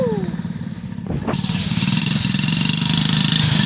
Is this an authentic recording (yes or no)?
no